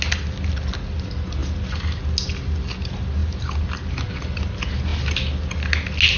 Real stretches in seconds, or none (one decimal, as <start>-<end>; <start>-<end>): 0.0-6.2